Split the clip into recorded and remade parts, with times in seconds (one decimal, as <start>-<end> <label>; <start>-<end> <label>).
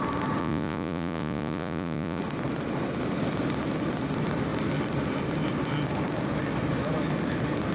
0.0-0.4 recorded; 0.4-2.2 remade; 2.2-7.7 recorded